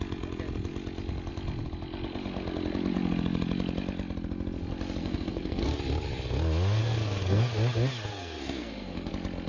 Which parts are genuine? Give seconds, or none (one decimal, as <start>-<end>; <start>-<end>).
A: 0.0-5.0; 5.8-6.8; 7.5-8.1; 9.1-9.5